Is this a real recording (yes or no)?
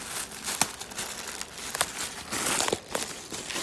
yes